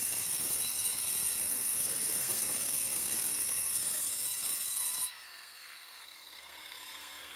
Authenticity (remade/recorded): remade